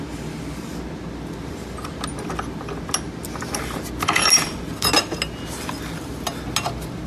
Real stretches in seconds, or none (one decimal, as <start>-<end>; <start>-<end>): 0.0-7.1